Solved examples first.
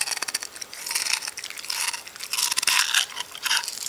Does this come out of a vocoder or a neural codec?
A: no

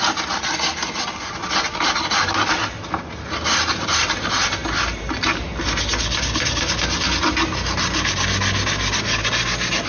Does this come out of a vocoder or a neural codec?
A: no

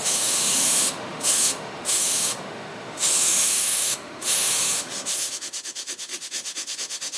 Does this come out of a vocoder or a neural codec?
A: yes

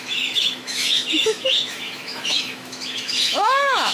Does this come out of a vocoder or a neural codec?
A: yes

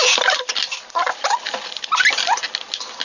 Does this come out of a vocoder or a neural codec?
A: no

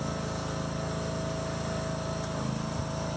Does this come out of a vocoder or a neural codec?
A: no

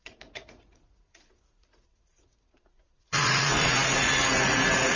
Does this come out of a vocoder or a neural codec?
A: yes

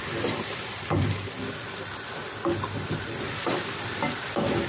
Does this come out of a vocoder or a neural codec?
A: no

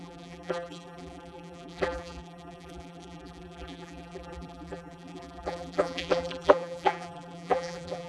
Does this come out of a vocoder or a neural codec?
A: yes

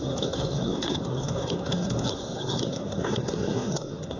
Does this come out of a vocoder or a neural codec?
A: yes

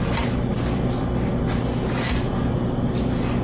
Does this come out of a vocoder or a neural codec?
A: no